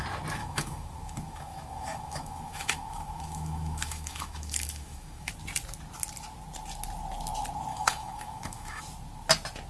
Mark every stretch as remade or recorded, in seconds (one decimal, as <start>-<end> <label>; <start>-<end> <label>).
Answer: 0.0-0.4 recorded; 0.4-5.3 remade; 5.3-7.7 recorded; 7.7-8.8 remade; 8.8-9.7 recorded